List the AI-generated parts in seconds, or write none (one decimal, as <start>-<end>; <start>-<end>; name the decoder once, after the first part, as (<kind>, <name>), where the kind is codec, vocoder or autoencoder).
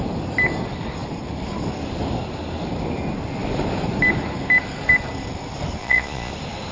5.8-6.3 (vocoder, Vocos)